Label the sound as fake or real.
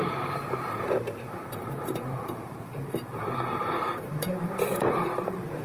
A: fake